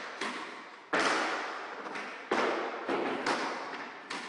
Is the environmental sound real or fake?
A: real